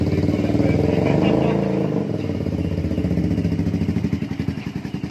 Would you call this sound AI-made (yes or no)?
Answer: no